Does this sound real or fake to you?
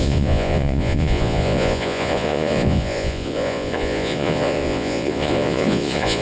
fake